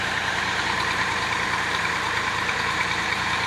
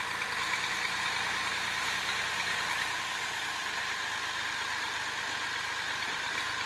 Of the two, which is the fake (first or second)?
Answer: first